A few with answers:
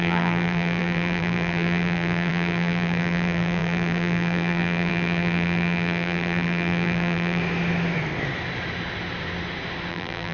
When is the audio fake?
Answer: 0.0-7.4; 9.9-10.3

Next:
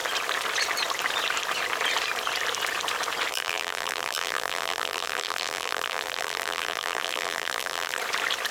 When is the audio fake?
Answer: 3.3-8.0

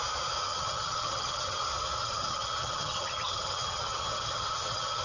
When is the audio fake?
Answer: 0.5-1.6; 2.0-5.0

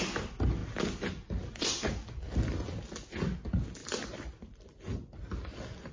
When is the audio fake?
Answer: none

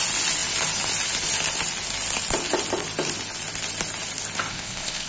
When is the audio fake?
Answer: 4.5-5.1

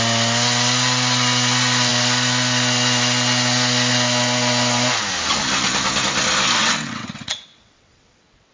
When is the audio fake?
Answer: 6.6-8.5

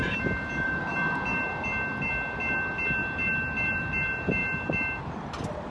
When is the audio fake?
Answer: none